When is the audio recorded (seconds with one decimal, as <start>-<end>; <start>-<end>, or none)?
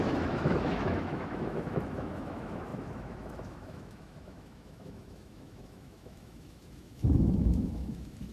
none